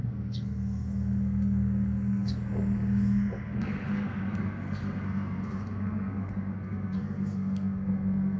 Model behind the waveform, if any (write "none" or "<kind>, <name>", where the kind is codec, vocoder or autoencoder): codec, SNAC